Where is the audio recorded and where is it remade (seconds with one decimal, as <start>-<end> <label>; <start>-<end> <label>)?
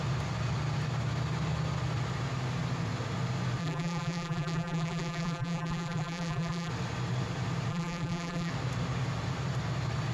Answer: 0.0-3.6 recorded; 3.6-6.7 remade; 6.7-7.7 recorded; 7.7-8.5 remade; 8.5-10.1 recorded